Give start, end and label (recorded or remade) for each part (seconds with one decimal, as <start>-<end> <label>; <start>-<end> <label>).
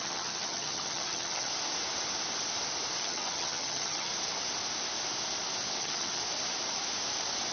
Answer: 0.0-1.5 remade; 1.5-3.0 recorded; 3.0-4.1 remade; 4.1-5.8 recorded; 5.8-6.2 remade; 6.2-7.5 recorded